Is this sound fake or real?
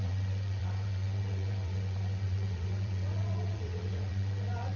fake